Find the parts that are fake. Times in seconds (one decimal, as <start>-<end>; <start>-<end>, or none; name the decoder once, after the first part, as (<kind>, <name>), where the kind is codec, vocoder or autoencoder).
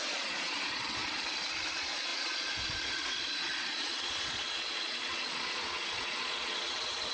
0.0-1.0 (vocoder, Vocos); 1.7-7.1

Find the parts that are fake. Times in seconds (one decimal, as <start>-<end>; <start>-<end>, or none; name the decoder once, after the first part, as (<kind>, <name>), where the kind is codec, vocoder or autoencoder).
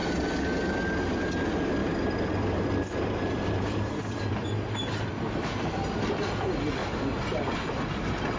1.8-5.1 (vocoder, BigVGAN v2)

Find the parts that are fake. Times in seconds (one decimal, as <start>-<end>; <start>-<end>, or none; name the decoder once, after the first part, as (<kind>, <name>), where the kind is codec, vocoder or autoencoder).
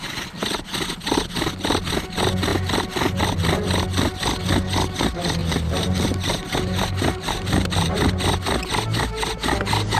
5.4-8.0 (vocoder, BigVGAN v2)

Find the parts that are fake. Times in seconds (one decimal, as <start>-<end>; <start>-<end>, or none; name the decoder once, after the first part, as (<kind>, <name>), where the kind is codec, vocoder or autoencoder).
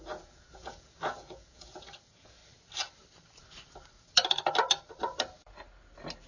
0.0-2.4 (vocoder, Vocos)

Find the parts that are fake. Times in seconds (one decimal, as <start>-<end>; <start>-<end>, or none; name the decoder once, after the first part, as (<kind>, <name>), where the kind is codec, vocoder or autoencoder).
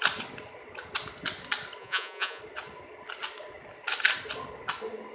1.8-2.4 (vocoder, Vocos)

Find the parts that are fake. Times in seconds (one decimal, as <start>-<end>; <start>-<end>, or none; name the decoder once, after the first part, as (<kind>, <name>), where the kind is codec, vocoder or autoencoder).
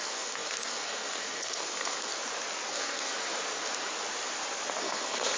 0.0-2.1 (codec, SNAC); 2.7-3.1; 4.8-5.4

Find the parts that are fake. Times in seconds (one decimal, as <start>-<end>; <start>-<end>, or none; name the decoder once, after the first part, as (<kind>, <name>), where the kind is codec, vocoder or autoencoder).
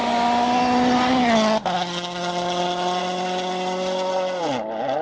none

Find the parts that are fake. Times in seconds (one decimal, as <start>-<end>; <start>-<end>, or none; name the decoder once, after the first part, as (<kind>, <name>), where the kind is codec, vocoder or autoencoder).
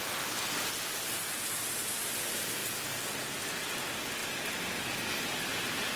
none